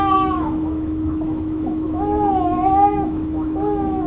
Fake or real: fake